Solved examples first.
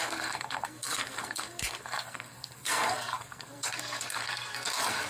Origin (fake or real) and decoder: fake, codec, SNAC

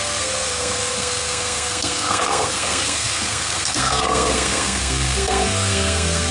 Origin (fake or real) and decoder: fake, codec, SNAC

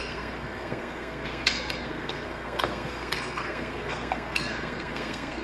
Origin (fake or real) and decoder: fake, codec, SNAC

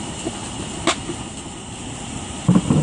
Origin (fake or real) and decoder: real